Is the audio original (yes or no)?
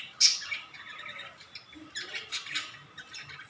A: yes